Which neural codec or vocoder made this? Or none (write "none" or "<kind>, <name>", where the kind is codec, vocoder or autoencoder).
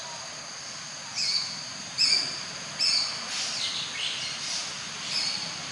none